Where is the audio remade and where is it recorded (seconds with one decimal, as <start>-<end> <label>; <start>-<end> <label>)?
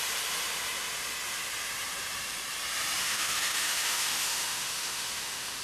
0.0-3.0 recorded; 3.0-5.6 remade